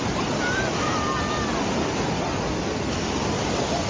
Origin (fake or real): fake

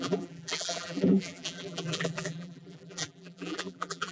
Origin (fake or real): fake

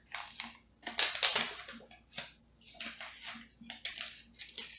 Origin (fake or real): real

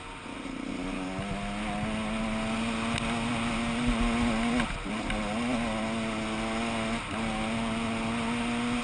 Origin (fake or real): real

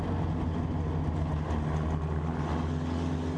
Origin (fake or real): real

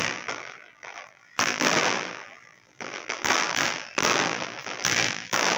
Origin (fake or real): fake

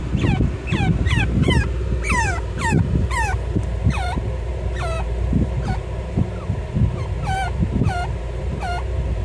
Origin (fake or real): fake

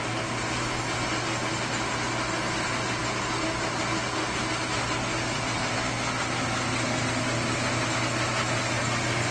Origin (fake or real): real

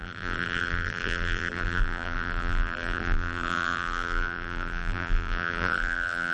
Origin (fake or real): fake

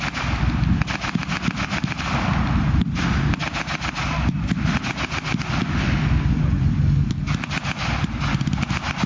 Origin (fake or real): real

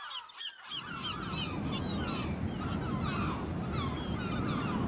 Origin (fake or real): real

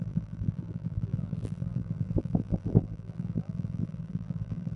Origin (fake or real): fake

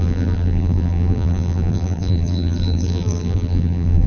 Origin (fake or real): fake